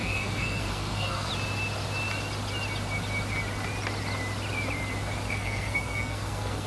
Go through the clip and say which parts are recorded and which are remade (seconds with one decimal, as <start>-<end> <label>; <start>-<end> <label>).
0.0-1.3 remade; 1.3-5.3 recorded; 5.3-6.7 remade